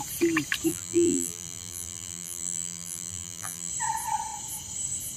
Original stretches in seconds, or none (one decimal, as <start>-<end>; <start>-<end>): 0.0-0.7; 3.7-5.2